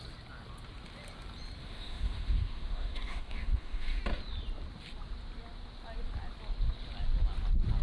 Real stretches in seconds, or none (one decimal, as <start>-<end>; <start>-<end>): 0.0-1.6; 4.0-7.8